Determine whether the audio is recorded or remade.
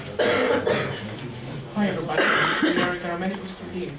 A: recorded